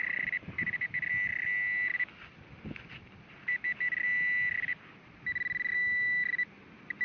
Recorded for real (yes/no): yes